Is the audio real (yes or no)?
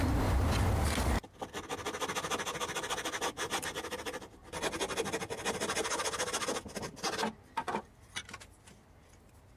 yes